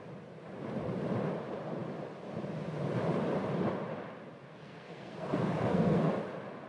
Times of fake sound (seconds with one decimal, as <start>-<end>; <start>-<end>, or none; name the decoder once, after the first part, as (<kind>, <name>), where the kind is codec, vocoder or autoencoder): 4.4-6.1 (codec, SNAC)